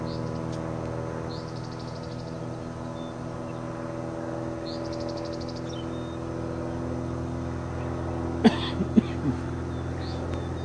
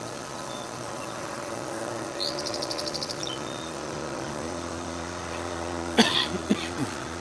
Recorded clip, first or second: first